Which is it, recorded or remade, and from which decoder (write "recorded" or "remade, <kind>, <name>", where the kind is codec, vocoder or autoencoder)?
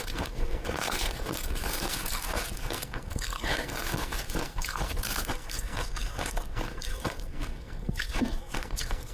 remade, codec, SNAC